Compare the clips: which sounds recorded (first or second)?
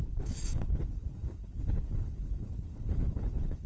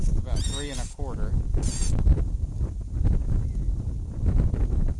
second